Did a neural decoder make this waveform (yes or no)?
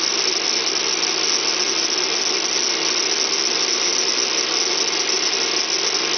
no